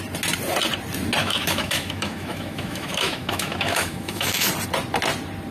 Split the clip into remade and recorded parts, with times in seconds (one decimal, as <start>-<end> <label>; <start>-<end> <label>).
0.0-1.2 recorded; 1.2-4.5 remade; 4.5-5.5 recorded